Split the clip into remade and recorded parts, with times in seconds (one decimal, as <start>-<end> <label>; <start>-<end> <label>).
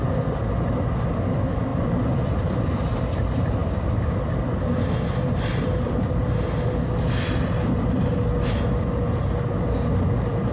0.0-10.5 recorded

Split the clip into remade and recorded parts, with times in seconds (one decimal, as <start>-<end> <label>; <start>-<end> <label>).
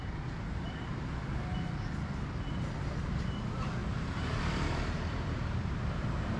0.0-1.5 remade; 1.5-2.6 recorded; 2.6-6.4 remade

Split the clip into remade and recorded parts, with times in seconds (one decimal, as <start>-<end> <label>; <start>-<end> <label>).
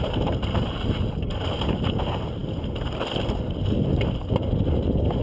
0.0-5.2 recorded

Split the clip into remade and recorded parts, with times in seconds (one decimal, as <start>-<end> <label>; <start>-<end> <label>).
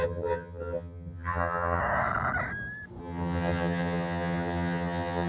0.0-1.8 remade; 1.8-3.0 recorded; 3.0-5.3 remade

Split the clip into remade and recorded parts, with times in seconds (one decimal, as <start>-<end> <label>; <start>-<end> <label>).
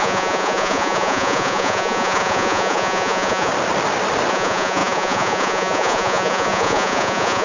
0.0-3.5 remade; 3.5-4.3 recorded; 4.3-7.4 remade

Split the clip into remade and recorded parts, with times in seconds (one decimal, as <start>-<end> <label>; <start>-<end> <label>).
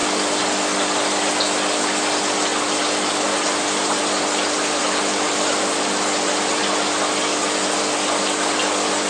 0.0-4.8 recorded; 4.8-5.6 remade; 5.6-9.1 recorded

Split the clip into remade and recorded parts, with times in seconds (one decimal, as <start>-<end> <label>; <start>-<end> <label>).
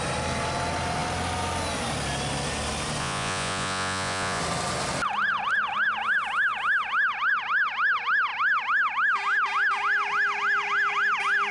0.0-3.0 recorded; 3.0-4.4 remade; 4.4-11.5 recorded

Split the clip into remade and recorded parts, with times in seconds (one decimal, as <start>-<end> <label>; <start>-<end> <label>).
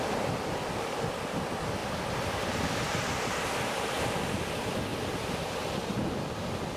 0.0-1.8 recorded; 1.8-3.4 remade; 3.4-4.9 recorded; 4.9-5.9 remade; 5.9-6.8 recorded